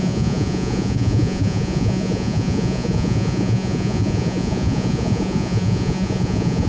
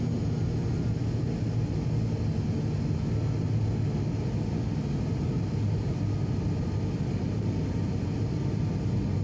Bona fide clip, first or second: second